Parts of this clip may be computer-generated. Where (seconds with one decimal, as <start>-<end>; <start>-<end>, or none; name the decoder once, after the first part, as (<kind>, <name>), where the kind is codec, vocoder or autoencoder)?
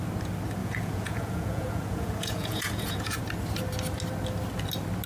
0.6-3.2 (vocoder, Vocos)